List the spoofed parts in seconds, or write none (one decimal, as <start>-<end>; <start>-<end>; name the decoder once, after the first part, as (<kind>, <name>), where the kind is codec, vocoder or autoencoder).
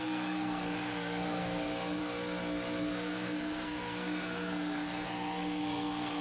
0.0-2.0 (codec, SNAC); 2.8-6.2